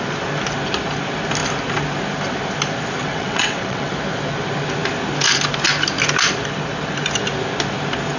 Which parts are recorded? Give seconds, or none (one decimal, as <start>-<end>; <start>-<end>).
0.0-3.0; 3.9-8.2